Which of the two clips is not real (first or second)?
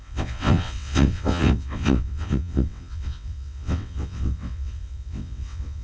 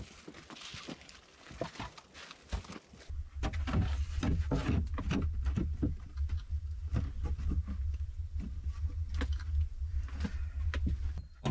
first